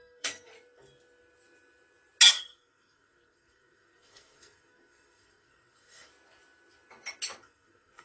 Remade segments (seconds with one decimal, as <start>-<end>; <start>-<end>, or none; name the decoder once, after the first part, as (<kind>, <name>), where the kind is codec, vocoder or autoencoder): 0.0-0.5 (codec, SNAC); 2.3-6.1; 7.4-8.0